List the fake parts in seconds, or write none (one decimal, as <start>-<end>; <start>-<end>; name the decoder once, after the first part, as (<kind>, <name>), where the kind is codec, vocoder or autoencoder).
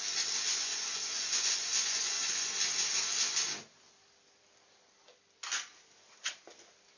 0.5-2.5 (vocoder, Vocos)